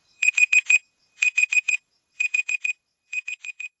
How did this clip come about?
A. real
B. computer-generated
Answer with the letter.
B